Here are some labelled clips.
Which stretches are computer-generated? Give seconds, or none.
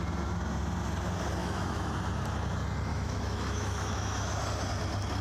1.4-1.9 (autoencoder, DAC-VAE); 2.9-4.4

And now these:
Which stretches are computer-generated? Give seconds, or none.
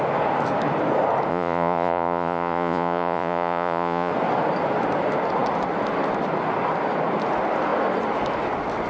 1.3-4.1 (vocoder, Vocos)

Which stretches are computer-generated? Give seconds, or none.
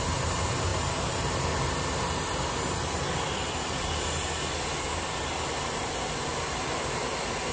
none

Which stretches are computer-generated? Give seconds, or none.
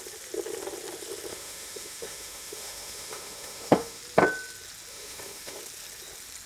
1.3-4.0 (autoencoder, DAC-VAE); 4.9-5.6